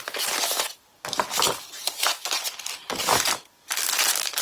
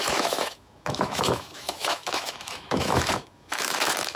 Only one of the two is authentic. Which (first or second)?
first